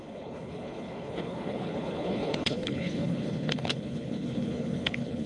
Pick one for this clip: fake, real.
fake